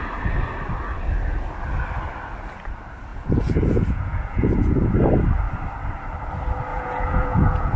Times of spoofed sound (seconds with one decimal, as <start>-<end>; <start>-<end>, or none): 3.1-4.9; 6.7-7.8